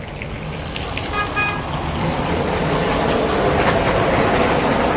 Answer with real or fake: real